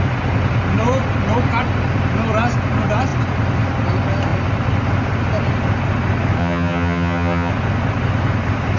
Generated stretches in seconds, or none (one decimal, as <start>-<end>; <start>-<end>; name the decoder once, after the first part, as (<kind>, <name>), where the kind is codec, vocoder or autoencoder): 6.4-7.5 (vocoder, HiFi-GAN)